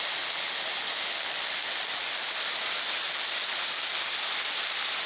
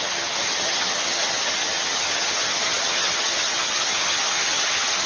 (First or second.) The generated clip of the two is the second